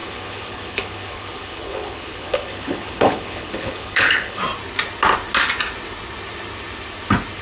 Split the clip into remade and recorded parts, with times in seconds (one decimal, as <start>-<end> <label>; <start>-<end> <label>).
0.0-4.4 remade; 4.4-7.4 recorded